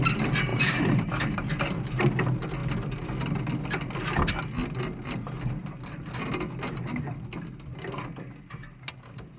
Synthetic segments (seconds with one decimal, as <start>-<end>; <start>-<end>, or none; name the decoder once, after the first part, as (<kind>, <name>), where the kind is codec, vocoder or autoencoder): 0.5-1.8 (vocoder, BigVGAN v2)